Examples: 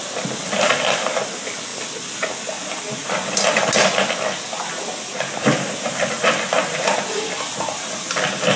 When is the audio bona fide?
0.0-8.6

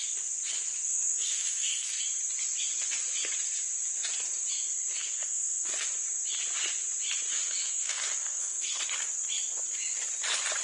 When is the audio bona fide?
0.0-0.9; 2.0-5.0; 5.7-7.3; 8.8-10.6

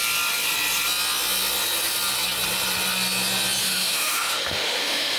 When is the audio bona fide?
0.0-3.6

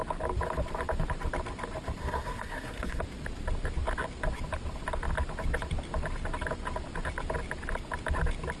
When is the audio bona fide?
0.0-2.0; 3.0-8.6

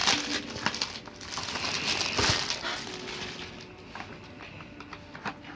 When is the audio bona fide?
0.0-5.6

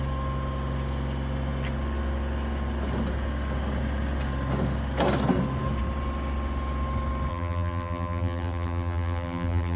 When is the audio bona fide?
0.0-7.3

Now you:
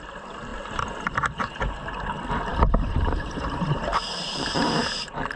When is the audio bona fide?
0.0-2.5

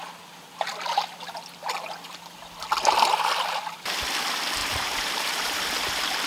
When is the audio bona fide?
0.0-4.6; 5.6-6.3